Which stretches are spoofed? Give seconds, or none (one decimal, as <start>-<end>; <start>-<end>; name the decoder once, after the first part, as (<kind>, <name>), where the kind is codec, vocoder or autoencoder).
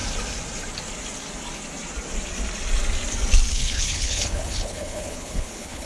3.5-5.9 (codec, HILCodec)